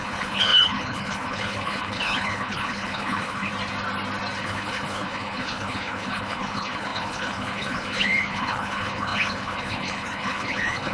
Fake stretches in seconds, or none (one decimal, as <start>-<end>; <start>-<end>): 0.0-3.5; 4.4-10.9